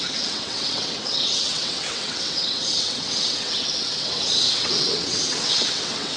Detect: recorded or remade remade